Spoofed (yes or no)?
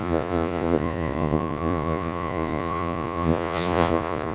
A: yes